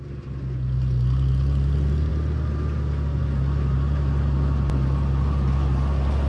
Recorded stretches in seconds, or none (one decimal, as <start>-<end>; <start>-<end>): 0.0-6.3